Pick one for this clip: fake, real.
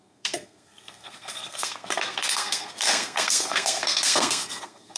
fake